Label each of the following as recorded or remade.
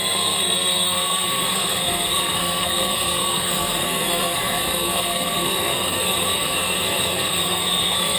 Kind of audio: remade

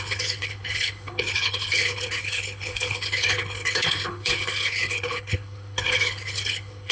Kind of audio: remade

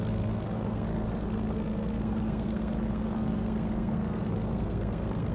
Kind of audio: remade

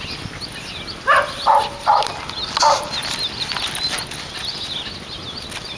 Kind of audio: recorded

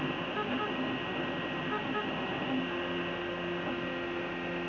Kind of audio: recorded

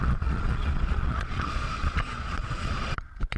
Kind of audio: remade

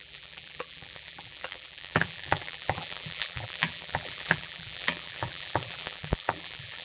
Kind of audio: remade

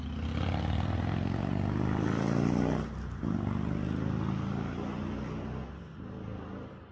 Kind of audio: recorded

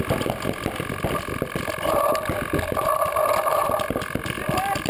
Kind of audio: recorded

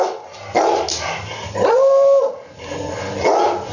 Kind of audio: recorded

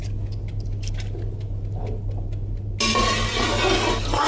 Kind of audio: recorded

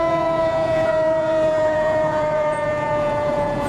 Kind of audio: remade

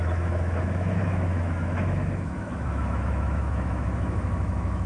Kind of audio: remade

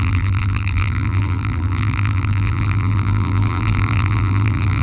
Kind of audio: remade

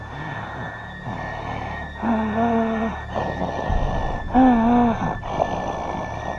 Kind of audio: recorded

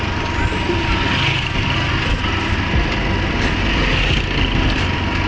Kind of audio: recorded